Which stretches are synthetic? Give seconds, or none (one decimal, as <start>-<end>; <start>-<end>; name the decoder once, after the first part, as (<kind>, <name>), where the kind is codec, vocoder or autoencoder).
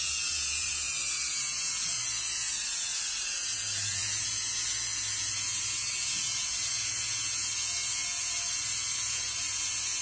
0.0-10.0 (vocoder, Vocos)